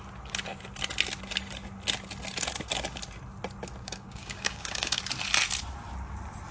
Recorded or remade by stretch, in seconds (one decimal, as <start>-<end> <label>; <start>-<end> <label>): 0.0-3.8 recorded; 3.8-5.0 remade; 5.0-6.5 recorded